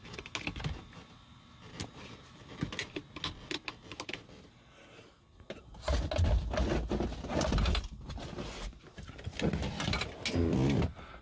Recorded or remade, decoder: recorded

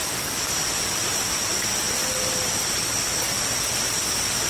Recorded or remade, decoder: remade, vocoder, BigVGAN v2